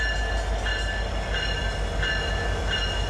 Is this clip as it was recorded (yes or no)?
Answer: yes